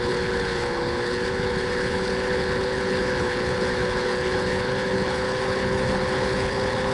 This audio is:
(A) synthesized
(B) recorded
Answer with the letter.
A